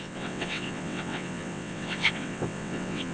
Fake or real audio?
fake